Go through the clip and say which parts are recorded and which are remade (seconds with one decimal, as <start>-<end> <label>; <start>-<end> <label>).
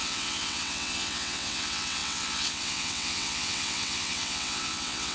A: 0.0-5.1 remade